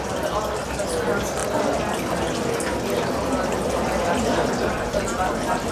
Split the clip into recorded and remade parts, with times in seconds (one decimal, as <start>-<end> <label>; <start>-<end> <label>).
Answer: 0.0-5.7 recorded

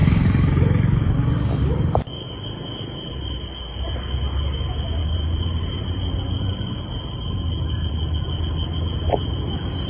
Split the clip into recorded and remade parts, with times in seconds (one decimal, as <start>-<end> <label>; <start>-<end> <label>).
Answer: 0.0-2.3 remade; 2.3-5.0 recorded; 5.0-8.4 remade; 8.4-9.9 recorded

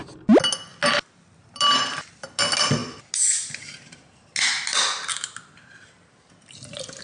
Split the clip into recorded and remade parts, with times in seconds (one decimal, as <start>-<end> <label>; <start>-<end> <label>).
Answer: 0.0-7.0 recorded

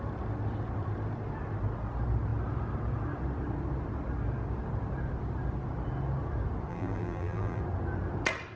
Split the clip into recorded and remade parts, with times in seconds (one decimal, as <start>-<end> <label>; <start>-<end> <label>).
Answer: 0.0-6.7 recorded; 6.7-7.6 remade; 7.6-8.6 recorded